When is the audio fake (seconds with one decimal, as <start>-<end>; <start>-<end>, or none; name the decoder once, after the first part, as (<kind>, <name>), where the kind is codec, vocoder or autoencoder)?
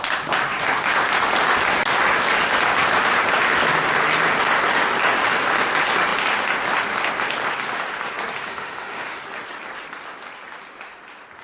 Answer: 8.5-9.2 (autoencoder, DAC-VAE)